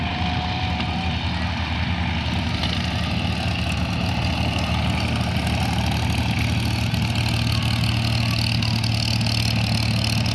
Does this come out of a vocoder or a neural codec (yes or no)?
no